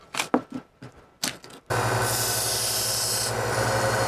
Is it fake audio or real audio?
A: real